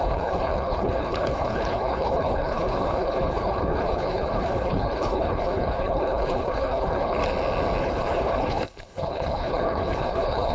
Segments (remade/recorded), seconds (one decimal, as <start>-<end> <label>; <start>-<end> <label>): 0.0-7.2 remade; 7.2-7.8 recorded; 7.8-10.5 remade